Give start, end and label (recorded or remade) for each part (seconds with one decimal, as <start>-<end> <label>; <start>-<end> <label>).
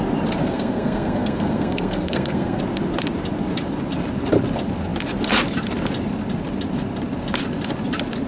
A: 0.0-0.4 recorded; 0.4-2.6 remade; 2.6-8.3 recorded